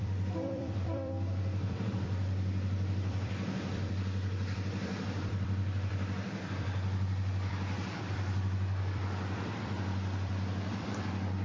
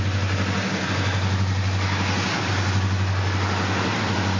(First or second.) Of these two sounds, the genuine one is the second